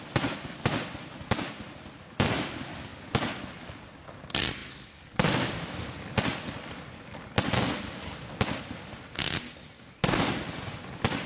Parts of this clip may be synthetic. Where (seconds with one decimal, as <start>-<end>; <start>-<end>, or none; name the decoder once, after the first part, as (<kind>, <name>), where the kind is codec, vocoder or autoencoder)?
none